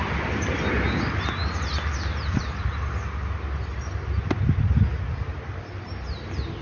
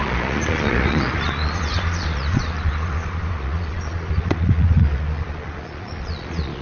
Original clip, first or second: first